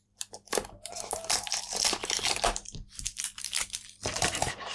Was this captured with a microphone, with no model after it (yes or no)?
no